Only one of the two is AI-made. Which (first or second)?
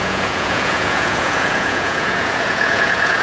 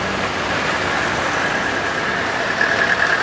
first